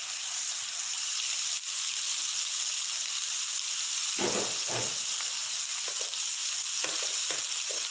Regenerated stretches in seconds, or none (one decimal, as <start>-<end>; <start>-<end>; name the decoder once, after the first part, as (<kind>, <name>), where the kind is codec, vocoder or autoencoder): none